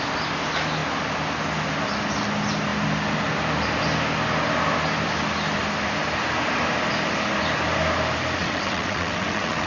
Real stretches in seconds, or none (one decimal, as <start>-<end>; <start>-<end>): 0.0-8.4